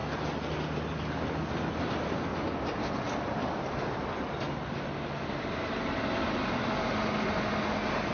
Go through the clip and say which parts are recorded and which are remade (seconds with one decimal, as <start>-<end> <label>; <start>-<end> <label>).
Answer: 0.0-8.1 recorded